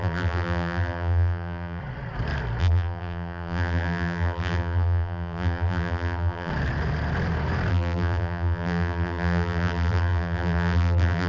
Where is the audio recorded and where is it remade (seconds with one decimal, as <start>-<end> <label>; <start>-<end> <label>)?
0.0-1.8 remade; 1.8-2.6 recorded; 2.6-6.5 remade; 6.5-7.7 recorded; 7.7-11.3 remade